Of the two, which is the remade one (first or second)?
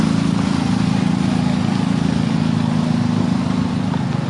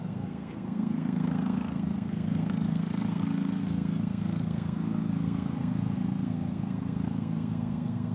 second